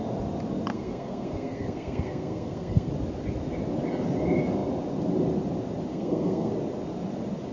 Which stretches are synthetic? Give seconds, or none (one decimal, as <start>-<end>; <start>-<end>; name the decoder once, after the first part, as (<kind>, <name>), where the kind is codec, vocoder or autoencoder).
0.7-2.9 (codec, SNAC); 5.9-6.5

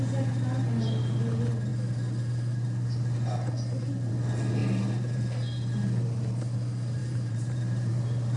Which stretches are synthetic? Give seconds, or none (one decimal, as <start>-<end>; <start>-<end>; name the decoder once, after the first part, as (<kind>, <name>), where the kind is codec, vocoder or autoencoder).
4.6-5.2 (vocoder, BigVGAN v2); 7.0-7.9

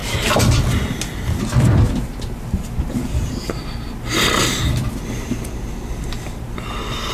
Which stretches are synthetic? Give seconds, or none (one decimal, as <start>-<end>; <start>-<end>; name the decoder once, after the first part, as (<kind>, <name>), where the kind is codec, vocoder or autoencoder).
none

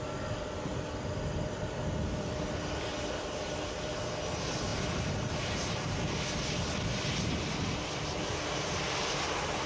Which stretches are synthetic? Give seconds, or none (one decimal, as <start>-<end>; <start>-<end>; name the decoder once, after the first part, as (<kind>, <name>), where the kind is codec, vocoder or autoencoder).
none

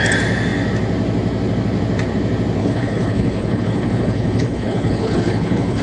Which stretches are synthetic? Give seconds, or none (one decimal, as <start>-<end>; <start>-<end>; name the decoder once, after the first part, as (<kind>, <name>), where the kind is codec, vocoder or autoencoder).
2.6-5.8 (codec, HILCodec)

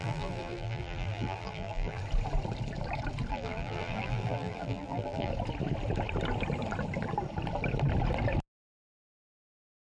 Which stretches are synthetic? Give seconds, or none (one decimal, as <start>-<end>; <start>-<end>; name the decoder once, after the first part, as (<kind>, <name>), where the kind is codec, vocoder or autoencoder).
0.0-2.0 (vocoder, BigVGAN v2); 3.3-5.3

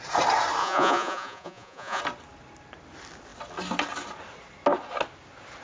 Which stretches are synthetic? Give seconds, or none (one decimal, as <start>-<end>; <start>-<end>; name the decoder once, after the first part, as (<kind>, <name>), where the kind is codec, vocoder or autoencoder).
0.6-2.0 (vocoder, Vocos)

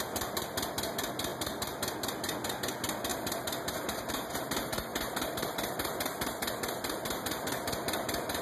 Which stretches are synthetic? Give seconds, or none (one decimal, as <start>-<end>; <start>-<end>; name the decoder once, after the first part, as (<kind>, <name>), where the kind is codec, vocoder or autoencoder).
3.1-4.1 (vocoder, BigVGAN v2); 4.9-8.4